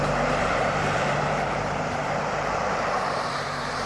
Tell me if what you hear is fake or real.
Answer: fake